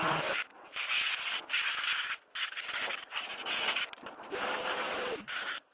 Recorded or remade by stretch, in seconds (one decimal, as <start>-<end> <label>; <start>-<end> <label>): 0.0-5.7 recorded